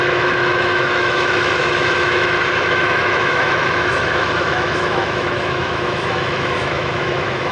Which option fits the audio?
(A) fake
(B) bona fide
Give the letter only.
A